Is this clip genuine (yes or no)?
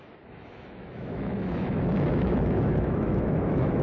no